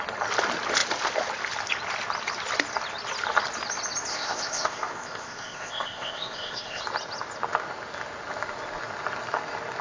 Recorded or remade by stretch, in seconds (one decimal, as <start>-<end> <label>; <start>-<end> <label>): 0.0-4.1 recorded; 4.1-6.8 remade; 6.8-9.8 recorded